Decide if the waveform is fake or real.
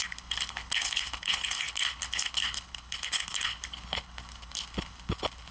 fake